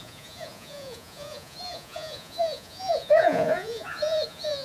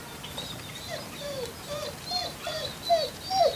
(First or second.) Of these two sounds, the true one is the second